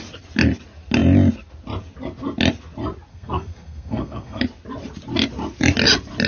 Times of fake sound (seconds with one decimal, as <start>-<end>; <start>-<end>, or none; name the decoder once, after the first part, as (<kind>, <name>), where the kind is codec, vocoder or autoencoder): 3.1-4.4 (codec, SNAC)